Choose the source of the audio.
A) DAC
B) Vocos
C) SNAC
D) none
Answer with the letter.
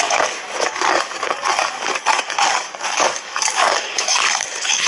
A